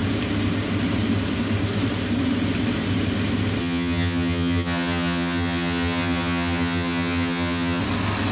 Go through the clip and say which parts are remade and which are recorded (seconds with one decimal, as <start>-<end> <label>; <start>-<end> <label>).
0.0-3.6 recorded; 3.6-7.8 remade; 7.8-8.3 recorded